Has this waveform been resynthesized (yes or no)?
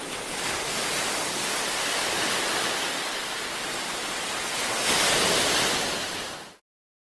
no